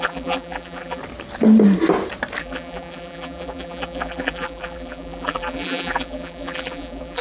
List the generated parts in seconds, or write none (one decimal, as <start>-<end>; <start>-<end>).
0.0-1.0; 2.4-7.2